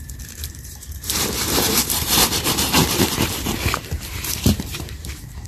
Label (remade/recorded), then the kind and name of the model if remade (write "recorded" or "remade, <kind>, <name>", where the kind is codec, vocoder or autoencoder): remade, vocoder, BigVGAN v2